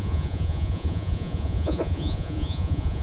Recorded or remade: remade